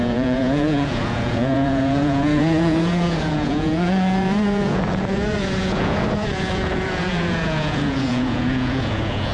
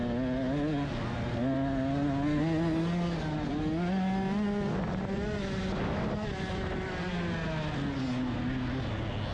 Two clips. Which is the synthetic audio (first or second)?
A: first